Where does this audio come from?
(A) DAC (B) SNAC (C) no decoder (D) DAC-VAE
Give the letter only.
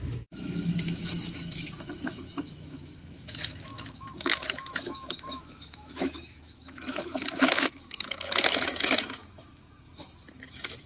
D